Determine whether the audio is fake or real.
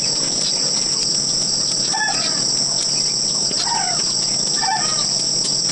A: real